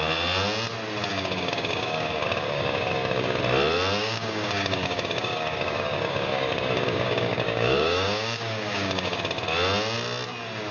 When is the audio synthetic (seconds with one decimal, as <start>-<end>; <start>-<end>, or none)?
1.1-3.4; 4.0-9.2